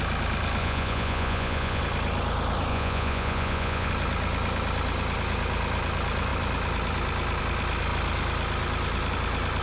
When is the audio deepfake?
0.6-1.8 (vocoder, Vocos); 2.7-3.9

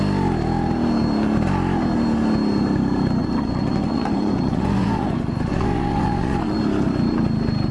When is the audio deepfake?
3.2-6.6 (vocoder, Vocos)

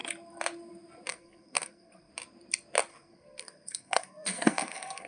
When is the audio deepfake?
1.1-2.1 (codec, SNAC); 2.9-5.1

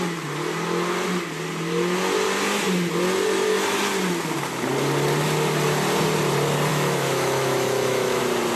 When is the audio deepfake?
6.7-8.2 (autoencoder, DAC-VAE)

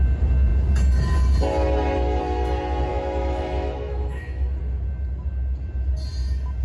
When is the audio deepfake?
2.9-4.6 (autoencoder, DAC-VAE)

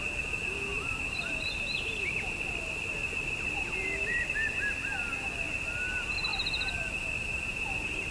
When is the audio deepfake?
0.7-5.1 (vocoder, BigVGAN v2)